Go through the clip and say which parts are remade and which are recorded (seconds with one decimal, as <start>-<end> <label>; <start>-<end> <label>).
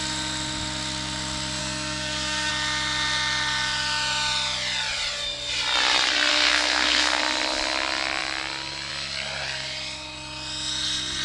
0.0-1.6 recorded; 1.6-2.5 remade; 2.5-6.3 recorded; 6.3-7.2 remade; 7.2-11.2 recorded